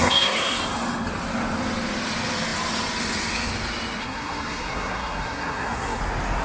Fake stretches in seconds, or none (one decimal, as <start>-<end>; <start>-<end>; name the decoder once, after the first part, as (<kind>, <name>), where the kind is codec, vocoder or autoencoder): 0.0-0.6 (codec, SNAC); 4.0-6.0